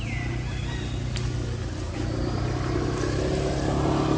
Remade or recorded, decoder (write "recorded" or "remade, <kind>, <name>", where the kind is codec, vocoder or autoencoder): recorded